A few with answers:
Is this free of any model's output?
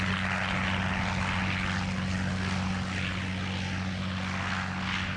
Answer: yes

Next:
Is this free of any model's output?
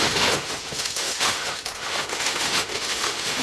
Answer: no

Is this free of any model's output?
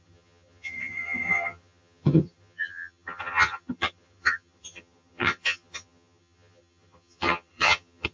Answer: no